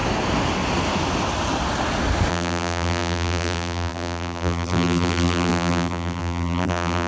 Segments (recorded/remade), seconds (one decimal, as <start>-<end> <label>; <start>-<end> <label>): 0.0-2.3 recorded; 2.3-7.1 remade